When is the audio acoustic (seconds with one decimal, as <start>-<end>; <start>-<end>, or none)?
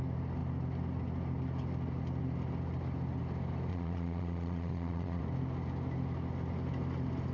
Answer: 0.0-3.7; 5.2-7.3